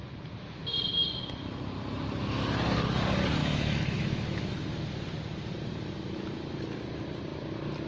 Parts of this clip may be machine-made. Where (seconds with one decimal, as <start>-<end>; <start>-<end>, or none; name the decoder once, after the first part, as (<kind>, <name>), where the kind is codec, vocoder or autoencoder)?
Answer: 3.4-4.6 (autoencoder, DAC-VAE)